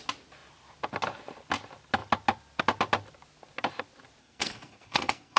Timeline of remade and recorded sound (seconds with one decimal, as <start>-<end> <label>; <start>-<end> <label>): 0.0-4.2 recorded; 4.2-5.4 remade